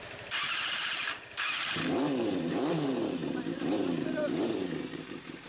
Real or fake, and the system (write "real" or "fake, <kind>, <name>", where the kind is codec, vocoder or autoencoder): fake, vocoder, BigVGAN v2